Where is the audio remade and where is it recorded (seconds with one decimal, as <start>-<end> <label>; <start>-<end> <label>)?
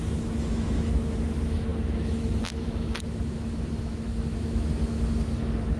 0.0-5.8 remade